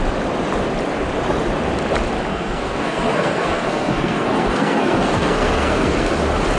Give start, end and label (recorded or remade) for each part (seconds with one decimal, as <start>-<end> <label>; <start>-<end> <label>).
0.0-2.3 recorded; 2.3-6.1 remade; 6.1-6.6 recorded